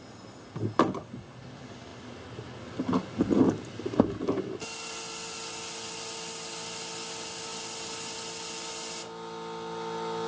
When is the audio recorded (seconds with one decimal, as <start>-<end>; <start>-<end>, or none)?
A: 0.0-10.3